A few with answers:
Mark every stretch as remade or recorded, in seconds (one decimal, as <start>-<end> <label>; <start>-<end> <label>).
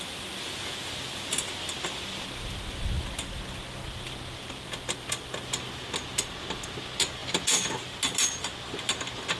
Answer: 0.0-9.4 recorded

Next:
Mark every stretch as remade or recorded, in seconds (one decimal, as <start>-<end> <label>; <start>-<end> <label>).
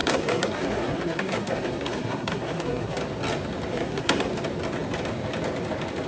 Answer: 0.0-3.0 remade; 3.0-3.7 recorded; 3.7-4.3 remade; 4.3-6.1 recorded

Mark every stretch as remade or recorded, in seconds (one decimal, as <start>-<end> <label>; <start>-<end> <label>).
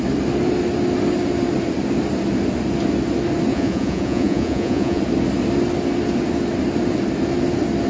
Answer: 0.0-3.5 recorded; 3.5-5.0 remade; 5.0-7.9 recorded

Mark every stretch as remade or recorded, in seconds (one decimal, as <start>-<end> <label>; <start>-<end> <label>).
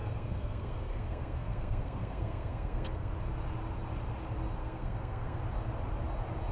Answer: 0.0-3.1 remade; 3.1-4.6 recorded; 4.6-5.4 remade; 5.4-6.5 recorded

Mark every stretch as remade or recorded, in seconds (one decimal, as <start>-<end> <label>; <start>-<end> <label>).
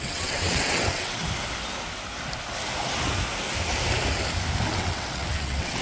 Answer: 0.0-1.2 remade; 1.2-4.7 recorded; 4.7-5.8 remade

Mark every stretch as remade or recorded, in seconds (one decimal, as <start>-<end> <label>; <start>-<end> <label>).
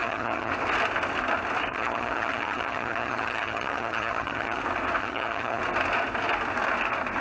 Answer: 0.0-0.5 remade; 0.5-1.7 recorded; 1.7-4.6 remade; 4.6-5.0 recorded; 5.0-5.6 remade; 5.6-7.2 recorded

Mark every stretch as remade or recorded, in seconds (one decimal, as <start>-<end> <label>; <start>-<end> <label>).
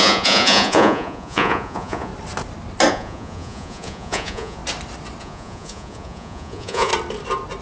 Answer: 0.0-2.1 remade; 2.1-2.9 recorded; 2.9-4.6 remade; 4.6-5.2 recorded; 5.2-6.9 remade; 6.9-7.6 recorded